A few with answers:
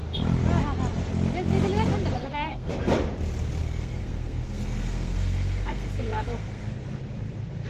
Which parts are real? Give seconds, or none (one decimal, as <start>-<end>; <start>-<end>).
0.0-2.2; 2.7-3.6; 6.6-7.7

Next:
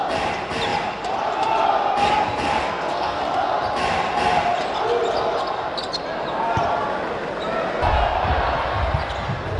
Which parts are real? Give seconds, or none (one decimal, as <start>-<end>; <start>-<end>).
0.0-2.6; 3.2-9.6

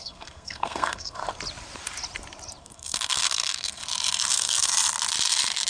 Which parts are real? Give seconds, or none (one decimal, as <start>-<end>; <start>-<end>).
1.2-2.6; 3.8-4.3; 4.7-5.7